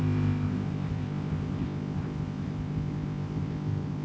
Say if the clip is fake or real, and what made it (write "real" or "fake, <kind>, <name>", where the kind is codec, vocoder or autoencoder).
fake, codec, ZipCodec